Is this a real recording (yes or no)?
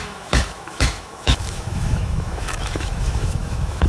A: no